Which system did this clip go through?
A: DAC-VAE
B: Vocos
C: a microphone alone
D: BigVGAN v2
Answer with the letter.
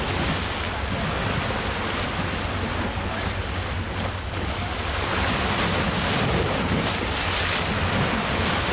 C